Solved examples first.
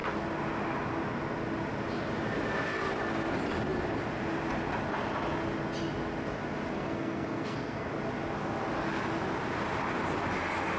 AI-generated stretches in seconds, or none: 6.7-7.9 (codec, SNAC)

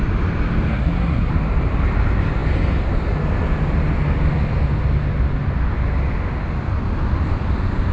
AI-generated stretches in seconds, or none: 0.7-1.3 (codec, SNAC)

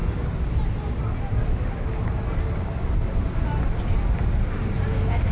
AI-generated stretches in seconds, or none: none

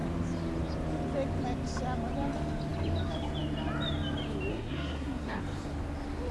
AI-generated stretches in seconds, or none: 4.5-5.4 (codec, SNAC)